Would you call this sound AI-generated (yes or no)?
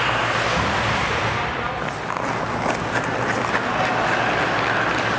no